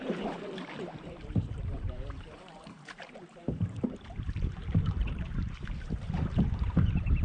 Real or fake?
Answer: fake